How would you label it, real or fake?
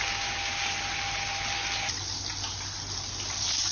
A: real